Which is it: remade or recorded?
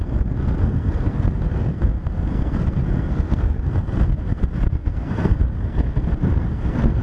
remade